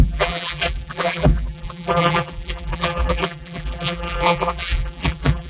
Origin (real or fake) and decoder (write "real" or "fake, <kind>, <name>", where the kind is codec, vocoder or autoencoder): fake, vocoder, BigVGAN v2